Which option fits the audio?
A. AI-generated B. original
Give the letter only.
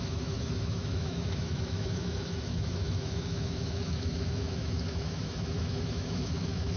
A